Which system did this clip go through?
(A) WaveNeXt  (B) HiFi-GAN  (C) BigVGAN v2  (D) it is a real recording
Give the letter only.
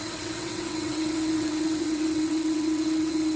A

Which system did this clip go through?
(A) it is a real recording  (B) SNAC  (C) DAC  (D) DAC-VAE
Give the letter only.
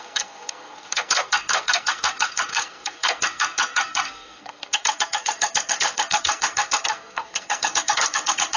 B